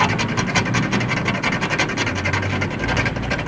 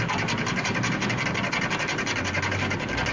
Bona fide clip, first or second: first